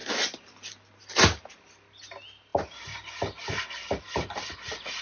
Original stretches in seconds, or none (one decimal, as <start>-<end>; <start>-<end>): 0.0-5.0